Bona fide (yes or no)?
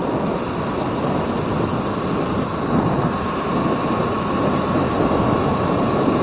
yes